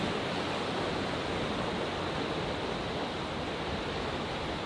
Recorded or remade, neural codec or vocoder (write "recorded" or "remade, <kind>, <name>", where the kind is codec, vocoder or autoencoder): recorded